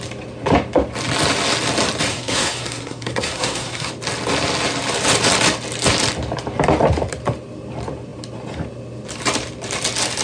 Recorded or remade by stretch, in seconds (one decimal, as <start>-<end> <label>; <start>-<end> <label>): 0.0-2.1 recorded; 2.1-3.9 remade; 3.9-10.2 recorded